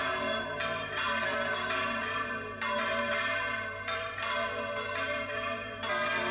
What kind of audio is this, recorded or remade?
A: remade